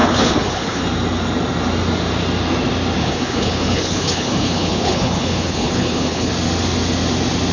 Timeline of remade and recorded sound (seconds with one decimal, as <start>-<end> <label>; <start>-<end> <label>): 0.0-0.8 remade; 0.8-3.0 recorded; 3.0-6.3 remade; 6.3-7.5 recorded